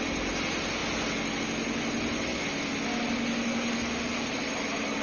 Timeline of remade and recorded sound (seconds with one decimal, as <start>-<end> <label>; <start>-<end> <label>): 0.0-5.0 recorded